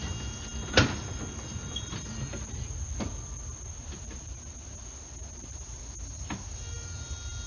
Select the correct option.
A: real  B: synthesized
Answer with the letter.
A